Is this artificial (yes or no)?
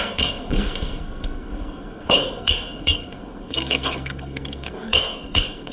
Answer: yes